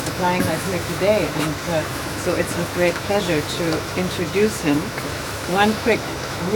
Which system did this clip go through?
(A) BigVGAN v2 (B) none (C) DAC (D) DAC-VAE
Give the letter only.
D